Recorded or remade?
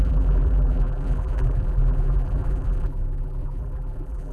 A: remade